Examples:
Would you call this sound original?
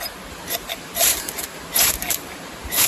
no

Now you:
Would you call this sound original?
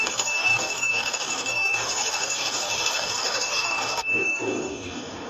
no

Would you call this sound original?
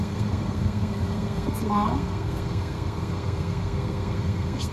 no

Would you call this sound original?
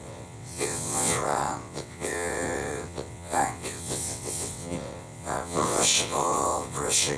no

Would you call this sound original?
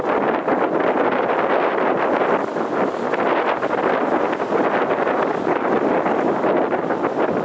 yes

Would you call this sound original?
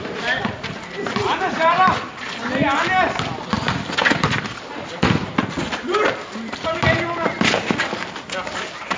yes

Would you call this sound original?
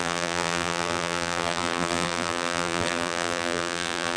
no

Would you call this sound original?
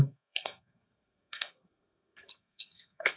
no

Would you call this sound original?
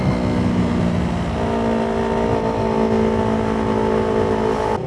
yes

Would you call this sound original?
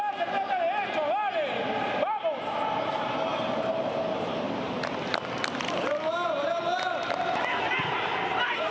yes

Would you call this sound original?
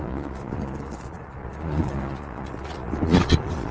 no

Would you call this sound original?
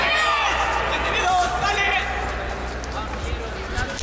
yes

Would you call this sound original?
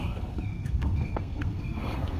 no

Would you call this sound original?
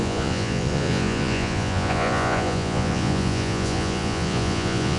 no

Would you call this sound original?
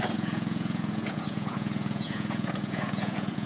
no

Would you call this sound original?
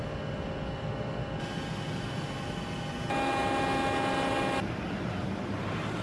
yes